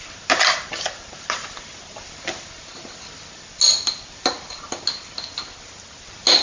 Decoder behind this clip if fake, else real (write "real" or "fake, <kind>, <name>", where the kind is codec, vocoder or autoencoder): real